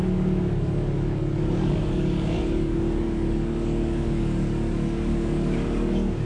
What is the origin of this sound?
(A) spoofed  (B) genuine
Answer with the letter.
A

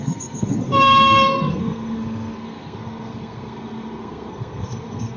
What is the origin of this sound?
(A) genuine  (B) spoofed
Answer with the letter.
B